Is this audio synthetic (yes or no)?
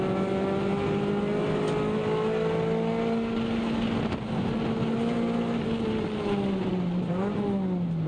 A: no